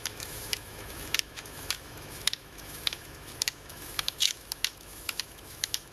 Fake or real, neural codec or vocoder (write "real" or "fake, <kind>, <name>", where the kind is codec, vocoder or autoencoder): fake, autoencoder, DAC-VAE